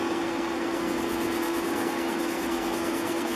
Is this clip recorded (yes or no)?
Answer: no